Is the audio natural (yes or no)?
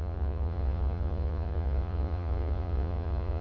no